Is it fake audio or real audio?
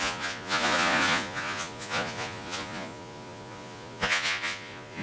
fake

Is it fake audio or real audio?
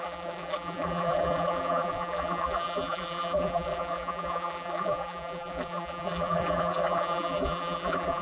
fake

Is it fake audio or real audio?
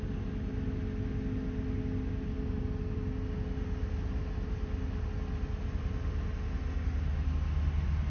real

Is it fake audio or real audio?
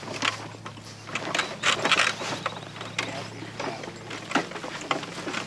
real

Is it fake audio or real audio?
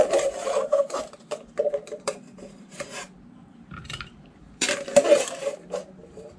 fake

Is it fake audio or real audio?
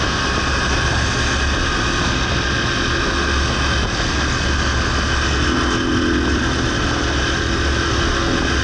real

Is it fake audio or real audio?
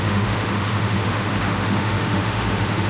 fake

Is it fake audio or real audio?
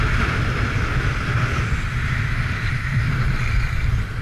real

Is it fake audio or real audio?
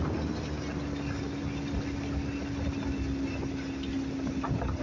real